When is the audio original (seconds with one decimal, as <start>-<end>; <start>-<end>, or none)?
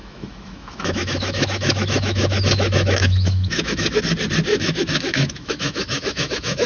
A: 4.0-4.5